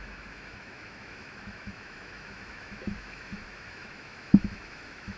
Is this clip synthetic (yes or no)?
yes